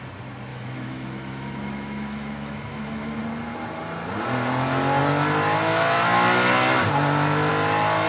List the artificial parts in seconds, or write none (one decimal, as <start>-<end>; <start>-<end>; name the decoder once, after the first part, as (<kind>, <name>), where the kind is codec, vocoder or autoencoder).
0.5-3.2 (autoencoder, DAC-VAE)